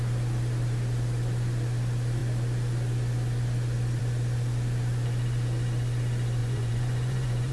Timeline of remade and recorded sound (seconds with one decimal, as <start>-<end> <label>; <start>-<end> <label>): 0.0-6.4 recorded; 6.4-7.5 remade